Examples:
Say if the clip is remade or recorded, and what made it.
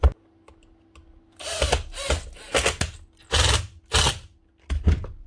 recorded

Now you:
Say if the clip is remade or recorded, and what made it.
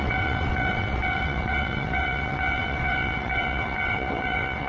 remade, vocoder, WaveNeXt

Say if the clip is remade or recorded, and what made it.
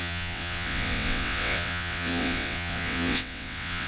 remade, vocoder, WaveNeXt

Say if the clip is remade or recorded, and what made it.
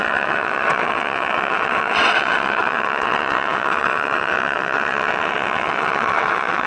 remade, vocoder, WaveNeXt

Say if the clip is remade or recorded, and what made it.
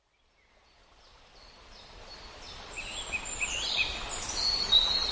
recorded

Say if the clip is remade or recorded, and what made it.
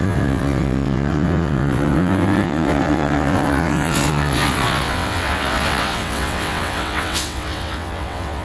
remade, vocoder, WaveNeXt